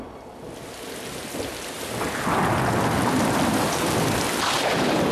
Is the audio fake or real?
real